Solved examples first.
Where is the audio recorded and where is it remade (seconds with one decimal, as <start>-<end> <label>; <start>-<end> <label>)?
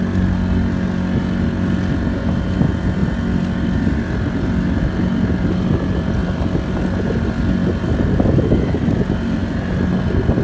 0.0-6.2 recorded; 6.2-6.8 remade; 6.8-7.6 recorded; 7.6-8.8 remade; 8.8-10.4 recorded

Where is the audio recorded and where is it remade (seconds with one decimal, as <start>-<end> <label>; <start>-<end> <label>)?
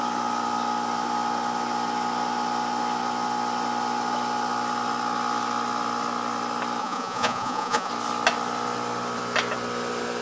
0.0-6.8 recorded; 6.8-7.9 remade; 7.9-10.2 recorded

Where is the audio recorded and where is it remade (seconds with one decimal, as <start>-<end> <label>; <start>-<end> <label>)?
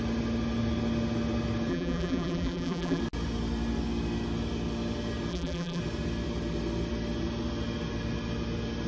0.0-1.7 recorded; 1.7-3.0 remade; 3.0-5.3 recorded; 5.3-5.8 remade; 5.8-8.9 recorded